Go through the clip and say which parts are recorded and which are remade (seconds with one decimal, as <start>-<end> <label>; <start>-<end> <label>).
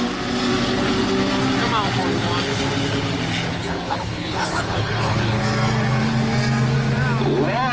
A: 0.0-3.5 recorded; 3.5-5.4 remade; 5.4-7.7 recorded